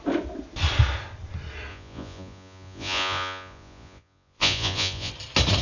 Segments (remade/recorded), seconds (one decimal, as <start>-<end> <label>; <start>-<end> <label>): 0.0-1.7 recorded; 1.7-5.1 remade; 5.1-5.6 recorded